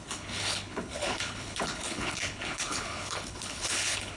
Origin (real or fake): fake